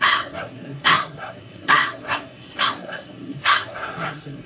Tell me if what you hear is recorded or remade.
remade